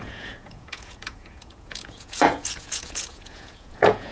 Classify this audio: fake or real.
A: fake